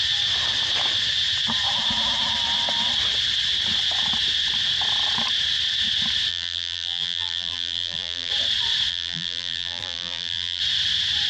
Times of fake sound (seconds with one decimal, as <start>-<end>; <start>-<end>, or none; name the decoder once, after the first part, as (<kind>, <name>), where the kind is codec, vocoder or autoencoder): 6.3-8.3 (vocoder, BigVGAN v2); 8.9-10.6